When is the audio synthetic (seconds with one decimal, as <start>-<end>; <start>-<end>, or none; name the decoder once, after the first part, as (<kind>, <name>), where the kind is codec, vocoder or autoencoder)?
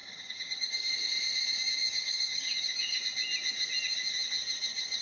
0.0-0.9 (codec, DAC); 1.8-3.0